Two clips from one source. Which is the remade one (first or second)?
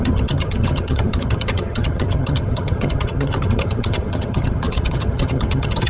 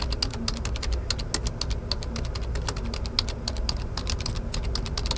first